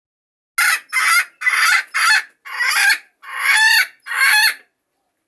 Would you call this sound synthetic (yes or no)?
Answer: no